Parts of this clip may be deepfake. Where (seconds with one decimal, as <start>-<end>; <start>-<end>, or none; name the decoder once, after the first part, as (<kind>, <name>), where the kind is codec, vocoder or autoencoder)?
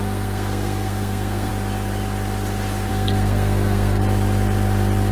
0.0-1.5 (codec, SNAC); 2.9-4.0